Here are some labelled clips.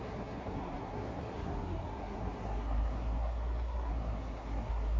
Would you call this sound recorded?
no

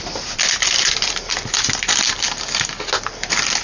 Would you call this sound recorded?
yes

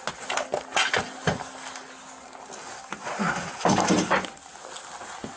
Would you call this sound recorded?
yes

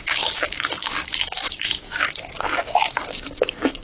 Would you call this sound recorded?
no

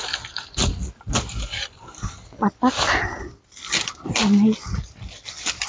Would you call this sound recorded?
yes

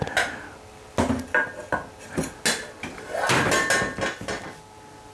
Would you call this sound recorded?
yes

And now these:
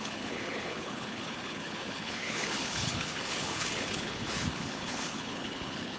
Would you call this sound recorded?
no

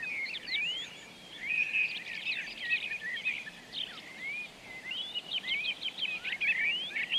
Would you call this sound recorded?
yes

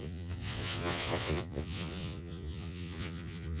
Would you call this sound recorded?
no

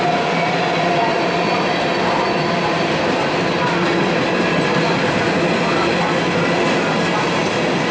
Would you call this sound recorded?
yes